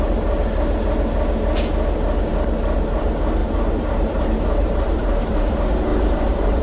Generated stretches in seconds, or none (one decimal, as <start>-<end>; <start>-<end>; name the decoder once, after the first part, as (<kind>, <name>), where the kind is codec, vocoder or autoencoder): 3.4-5.5 (vocoder, BigVGAN v2); 5.9-6.6